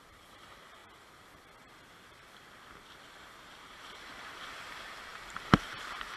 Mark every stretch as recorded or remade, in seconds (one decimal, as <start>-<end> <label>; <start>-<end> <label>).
0.0-0.8 remade; 0.8-4.5 recorded; 4.5-6.2 remade